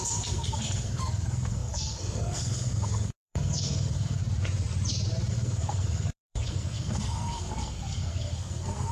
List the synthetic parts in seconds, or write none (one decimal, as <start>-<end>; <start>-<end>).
0.0-4.2; 5.3-8.9